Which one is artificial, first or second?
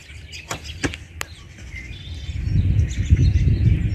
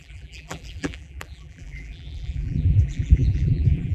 second